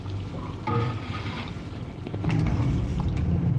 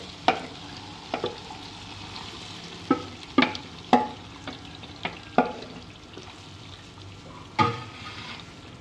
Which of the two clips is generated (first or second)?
first